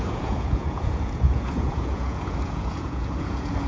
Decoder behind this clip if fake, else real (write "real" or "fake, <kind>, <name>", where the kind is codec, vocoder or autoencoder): fake, vocoder, Vocos